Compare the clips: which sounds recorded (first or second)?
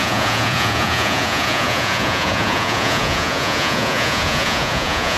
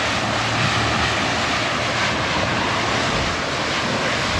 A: second